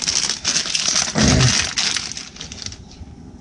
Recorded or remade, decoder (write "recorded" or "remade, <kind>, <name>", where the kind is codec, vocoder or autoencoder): recorded